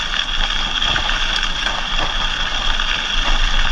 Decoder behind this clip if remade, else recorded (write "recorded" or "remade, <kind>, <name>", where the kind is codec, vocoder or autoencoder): recorded